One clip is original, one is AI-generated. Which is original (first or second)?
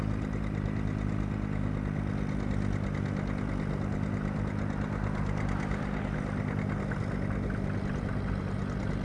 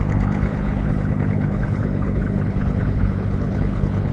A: first